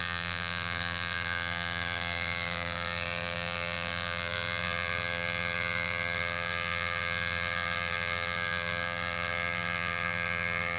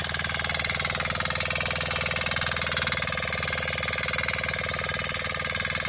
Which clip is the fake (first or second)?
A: first